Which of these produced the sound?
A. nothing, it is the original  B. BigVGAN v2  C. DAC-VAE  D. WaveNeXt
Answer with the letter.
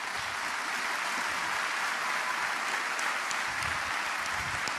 A